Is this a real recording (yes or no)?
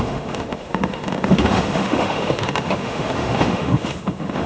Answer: no